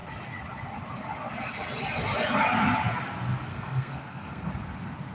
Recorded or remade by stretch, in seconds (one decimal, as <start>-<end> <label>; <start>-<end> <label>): 0.0-3.5 recorded; 3.5-4.5 remade; 4.5-5.1 recorded